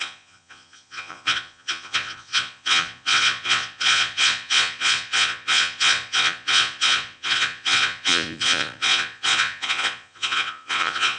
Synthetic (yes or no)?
yes